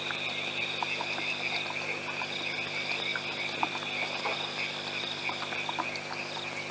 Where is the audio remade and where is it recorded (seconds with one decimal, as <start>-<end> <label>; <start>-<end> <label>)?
0.0-6.7 recorded